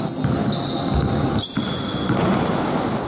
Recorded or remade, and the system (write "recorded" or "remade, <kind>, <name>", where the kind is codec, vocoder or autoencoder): recorded